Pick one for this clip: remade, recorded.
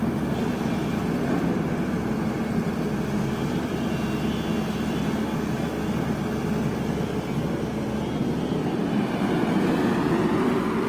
recorded